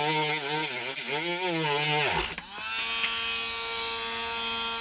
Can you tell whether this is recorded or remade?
recorded